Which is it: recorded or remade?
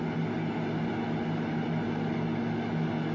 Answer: recorded